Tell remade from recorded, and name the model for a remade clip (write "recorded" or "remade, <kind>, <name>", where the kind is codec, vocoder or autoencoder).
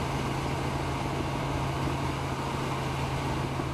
recorded